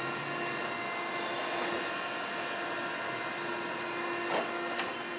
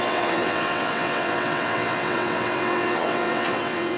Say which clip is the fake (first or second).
second